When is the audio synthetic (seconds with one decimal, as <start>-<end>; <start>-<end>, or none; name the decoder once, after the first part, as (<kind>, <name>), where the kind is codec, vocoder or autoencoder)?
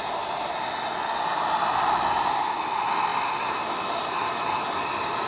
none